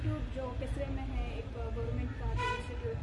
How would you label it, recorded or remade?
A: recorded